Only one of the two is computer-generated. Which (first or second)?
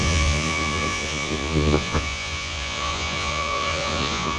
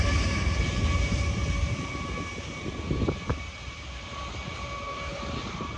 first